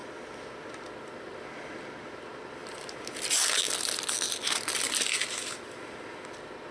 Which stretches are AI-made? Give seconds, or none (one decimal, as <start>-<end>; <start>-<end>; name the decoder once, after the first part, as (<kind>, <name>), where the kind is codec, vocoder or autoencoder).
none